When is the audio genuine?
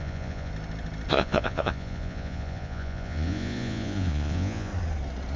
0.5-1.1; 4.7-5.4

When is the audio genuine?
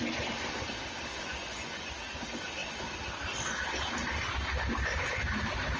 0.0-1.1; 1.9-5.8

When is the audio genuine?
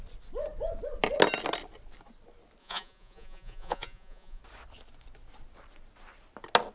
0.0-2.6; 4.4-6.7